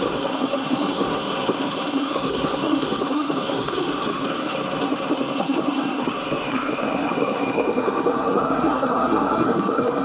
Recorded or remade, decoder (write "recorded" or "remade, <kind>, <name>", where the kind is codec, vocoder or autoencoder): remade, codec, SNAC